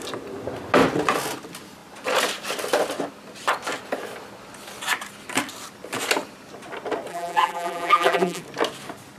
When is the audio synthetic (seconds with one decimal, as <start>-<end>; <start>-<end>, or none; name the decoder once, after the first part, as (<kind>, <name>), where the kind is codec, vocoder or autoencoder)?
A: 7.1-8.4 (vocoder, BigVGAN v2)